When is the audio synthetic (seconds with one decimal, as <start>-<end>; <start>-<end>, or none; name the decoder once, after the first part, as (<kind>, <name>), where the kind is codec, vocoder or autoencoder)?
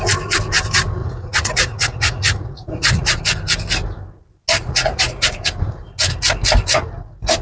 1.0-3.2 (vocoder, Vocos); 4.6-5.4